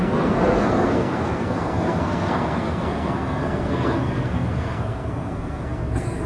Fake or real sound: fake